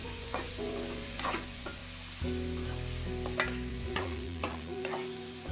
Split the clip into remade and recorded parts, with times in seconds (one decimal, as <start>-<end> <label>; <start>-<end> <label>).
0.0-1.8 remade; 1.8-3.7 recorded; 3.7-5.5 remade